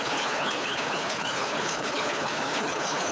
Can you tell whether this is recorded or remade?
remade